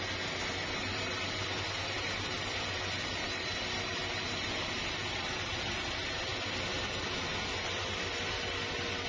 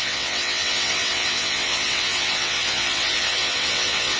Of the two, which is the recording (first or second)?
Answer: first